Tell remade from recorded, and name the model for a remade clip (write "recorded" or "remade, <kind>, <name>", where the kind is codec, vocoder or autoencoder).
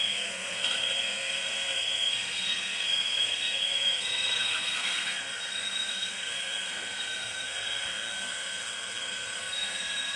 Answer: remade, codec, SNAC